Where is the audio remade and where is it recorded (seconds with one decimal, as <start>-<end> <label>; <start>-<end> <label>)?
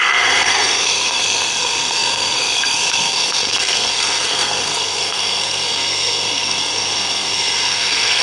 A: 0.0-8.2 remade